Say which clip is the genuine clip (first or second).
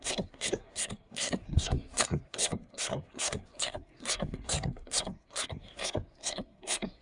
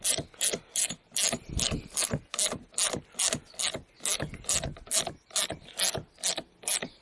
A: second